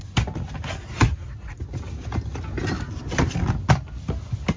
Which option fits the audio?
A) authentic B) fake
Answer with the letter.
A